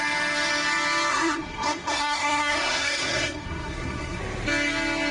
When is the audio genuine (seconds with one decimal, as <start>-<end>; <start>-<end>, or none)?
0.0-1.1; 4.2-5.1